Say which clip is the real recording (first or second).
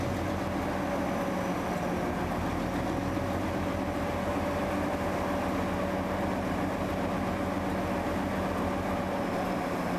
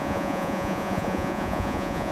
first